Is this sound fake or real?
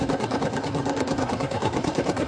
fake